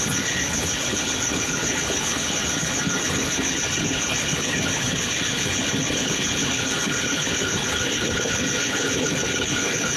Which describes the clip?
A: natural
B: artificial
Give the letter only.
B